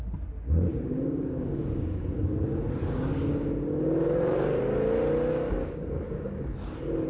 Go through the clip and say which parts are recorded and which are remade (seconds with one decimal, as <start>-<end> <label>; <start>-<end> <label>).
0.0-0.7 recorded; 0.7-2.1 remade; 2.1-2.8 recorded; 2.8-3.5 remade; 3.5-5.3 recorded; 5.3-6.4 remade; 6.4-7.1 recorded

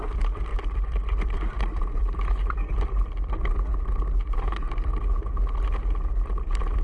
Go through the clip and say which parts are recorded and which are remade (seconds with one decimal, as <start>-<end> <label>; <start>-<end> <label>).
0.0-6.8 recorded

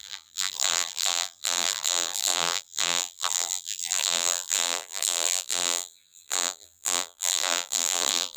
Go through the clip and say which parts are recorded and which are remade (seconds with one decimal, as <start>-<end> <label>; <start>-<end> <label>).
0.0-8.4 remade

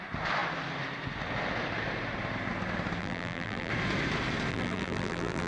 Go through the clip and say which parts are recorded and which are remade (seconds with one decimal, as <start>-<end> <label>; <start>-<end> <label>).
0.0-3.0 recorded; 3.0-3.7 remade; 3.7-4.5 recorded; 4.5-5.5 remade

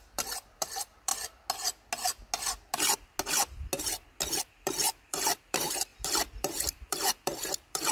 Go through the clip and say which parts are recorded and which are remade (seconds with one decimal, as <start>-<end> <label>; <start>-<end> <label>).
0.0-1.1 remade; 1.1-4.4 recorded; 4.4-7.9 remade

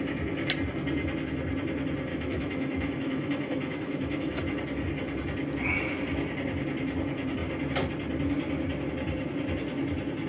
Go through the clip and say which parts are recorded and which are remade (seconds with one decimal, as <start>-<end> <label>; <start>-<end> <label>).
0.0-2.1 recorded; 2.1-4.4 remade; 4.4-10.3 recorded

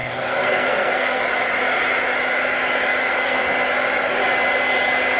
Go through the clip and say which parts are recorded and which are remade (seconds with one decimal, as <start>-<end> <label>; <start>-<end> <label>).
0.0-1.2 remade; 1.2-3.0 recorded; 3.0-3.5 remade; 3.5-5.2 recorded